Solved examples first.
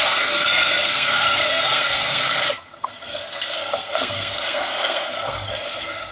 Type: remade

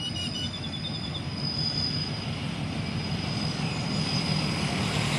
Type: recorded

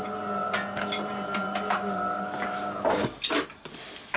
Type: recorded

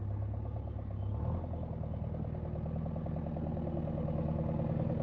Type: recorded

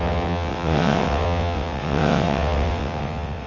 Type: remade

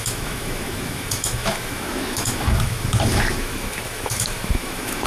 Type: remade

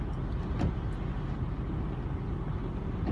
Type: recorded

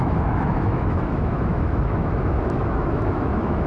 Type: remade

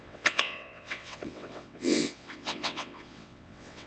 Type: remade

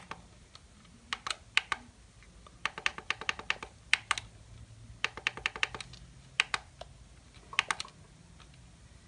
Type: recorded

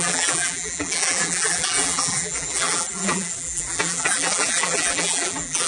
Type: remade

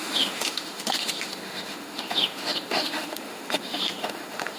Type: remade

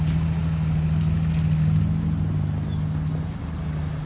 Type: recorded